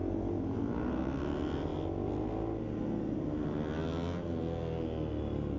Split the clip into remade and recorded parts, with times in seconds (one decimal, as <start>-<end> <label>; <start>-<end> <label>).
0.0-5.6 recorded